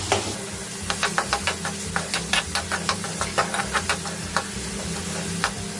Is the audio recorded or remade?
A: recorded